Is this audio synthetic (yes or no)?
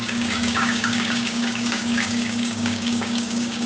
yes